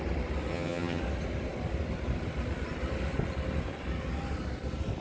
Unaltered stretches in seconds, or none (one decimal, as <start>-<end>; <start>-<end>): 0.0-0.5; 1.0-5.0